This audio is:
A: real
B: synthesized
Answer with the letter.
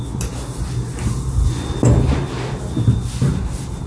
A